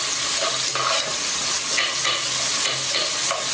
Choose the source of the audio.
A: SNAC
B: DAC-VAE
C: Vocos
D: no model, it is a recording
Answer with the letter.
D